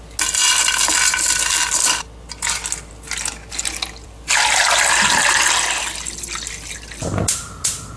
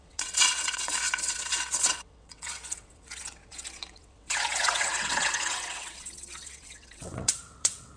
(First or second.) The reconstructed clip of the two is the second